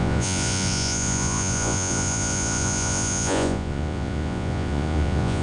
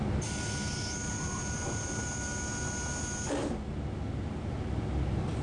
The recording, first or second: second